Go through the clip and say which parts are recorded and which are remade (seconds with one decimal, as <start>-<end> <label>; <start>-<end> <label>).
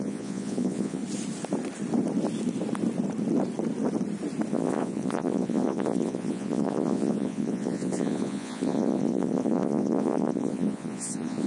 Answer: 0.0-1.0 remade; 1.0-4.5 recorded; 4.5-11.5 remade